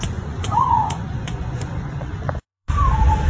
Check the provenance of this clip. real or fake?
fake